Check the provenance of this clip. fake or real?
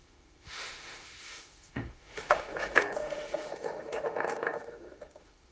fake